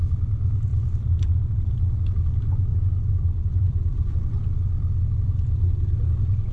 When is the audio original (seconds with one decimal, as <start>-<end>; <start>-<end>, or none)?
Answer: 0.0-0.7; 2.0-2.7; 4.1-6.5